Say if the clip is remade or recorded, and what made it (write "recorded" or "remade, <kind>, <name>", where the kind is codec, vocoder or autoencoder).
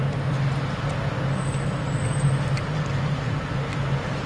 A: recorded